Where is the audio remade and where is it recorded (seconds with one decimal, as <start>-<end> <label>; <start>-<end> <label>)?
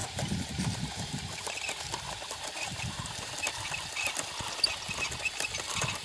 0.0-3.3 remade; 3.3-6.0 recorded